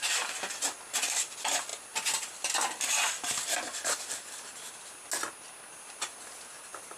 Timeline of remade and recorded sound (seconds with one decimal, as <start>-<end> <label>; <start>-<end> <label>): 0.0-7.0 recorded